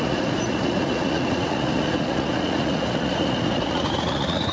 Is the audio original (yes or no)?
no